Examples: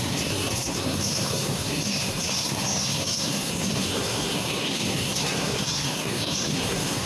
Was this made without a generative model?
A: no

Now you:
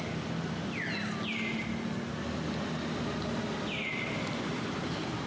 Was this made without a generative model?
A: yes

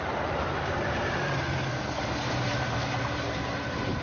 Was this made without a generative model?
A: no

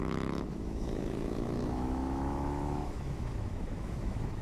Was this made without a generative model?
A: no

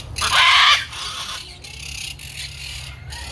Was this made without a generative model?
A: yes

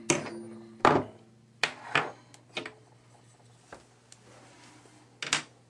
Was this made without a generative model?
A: yes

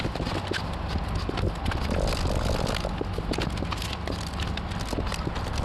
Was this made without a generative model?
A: yes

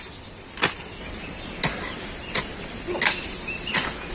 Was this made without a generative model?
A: yes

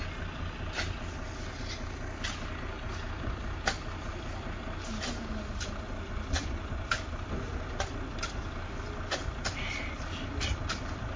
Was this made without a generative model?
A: yes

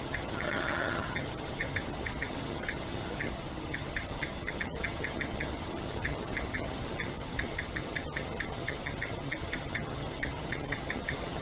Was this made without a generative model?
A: no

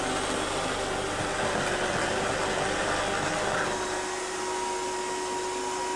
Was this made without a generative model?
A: yes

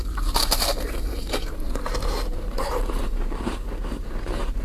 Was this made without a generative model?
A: no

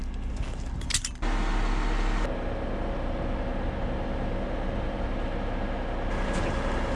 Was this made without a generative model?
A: yes